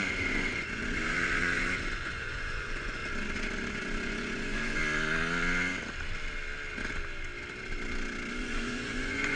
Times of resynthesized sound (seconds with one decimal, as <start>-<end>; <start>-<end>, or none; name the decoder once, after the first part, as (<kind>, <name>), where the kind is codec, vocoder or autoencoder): 0.0-3.0 (vocoder, Vocos); 3.7-4.8; 8.4-9.4